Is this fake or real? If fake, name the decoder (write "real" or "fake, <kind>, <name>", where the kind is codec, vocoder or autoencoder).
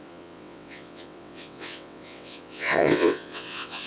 fake, vocoder, WaveNeXt